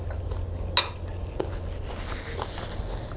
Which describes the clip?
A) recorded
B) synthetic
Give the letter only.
A